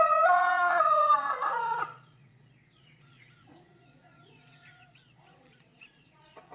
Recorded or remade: remade